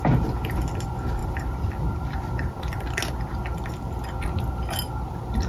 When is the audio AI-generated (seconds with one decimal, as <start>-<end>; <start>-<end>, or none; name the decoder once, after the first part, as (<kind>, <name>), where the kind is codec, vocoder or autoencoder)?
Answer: 1.2-2.9 (vocoder, BigVGAN v2)